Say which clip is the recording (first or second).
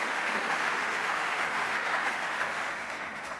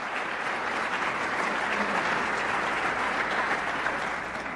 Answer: second